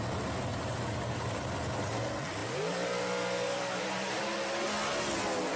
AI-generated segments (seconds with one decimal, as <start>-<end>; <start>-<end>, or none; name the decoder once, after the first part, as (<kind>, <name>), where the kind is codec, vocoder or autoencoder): 0.5-1.4 (vocoder, BigVGAN v2); 2.4-4.2